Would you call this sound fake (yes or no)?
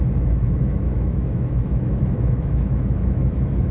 yes